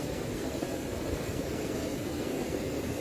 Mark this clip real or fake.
fake